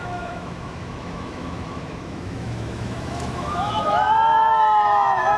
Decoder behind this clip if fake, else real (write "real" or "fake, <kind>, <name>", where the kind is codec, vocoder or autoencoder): fake, autoencoder, DAC-VAE